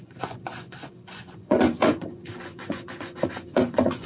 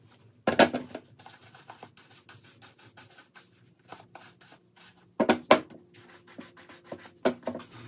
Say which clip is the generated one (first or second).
first